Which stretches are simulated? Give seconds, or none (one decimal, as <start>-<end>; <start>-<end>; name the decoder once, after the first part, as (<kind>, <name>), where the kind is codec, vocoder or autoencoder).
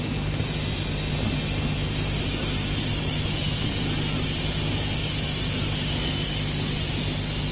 2.9-3.7 (autoencoder, DAC-VAE)